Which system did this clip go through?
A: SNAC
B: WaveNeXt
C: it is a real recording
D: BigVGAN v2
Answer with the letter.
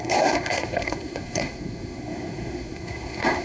A